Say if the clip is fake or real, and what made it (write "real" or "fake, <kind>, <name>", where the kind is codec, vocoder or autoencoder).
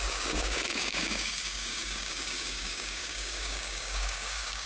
fake, codec, DAC